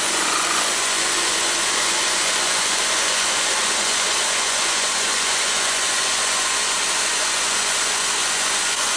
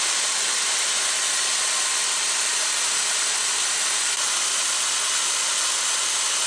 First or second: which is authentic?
second